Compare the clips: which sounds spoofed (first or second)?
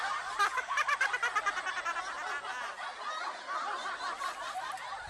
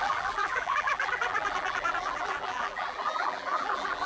second